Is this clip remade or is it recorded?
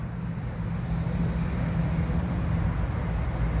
recorded